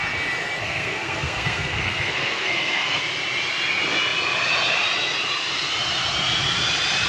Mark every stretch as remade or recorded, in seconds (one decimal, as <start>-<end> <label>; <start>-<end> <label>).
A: 0.0-0.6 recorded; 0.6-3.0 remade; 3.0-7.1 recorded